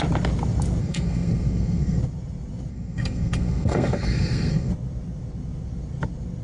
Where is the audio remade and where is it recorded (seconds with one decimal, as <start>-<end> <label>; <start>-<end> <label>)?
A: 0.0-0.8 recorded; 0.8-2.0 remade; 2.0-2.7 recorded; 2.7-4.7 remade; 4.7-6.4 recorded

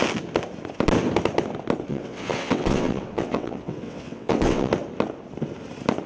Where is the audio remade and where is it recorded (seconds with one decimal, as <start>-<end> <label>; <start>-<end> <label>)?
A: 0.0-1.9 recorded; 1.9-4.7 remade; 4.7-6.1 recorded